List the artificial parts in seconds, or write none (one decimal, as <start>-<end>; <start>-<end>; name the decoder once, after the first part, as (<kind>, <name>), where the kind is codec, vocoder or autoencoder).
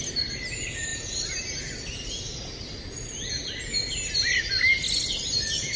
none